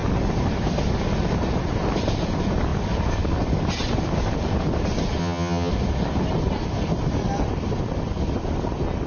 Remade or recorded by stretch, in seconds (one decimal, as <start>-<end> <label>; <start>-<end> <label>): 0.0-5.2 recorded; 5.2-5.7 remade; 5.7-9.1 recorded